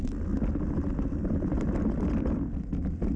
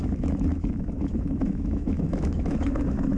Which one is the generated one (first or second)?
second